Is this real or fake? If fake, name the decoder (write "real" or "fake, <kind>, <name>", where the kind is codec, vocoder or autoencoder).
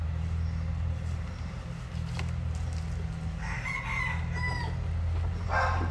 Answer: real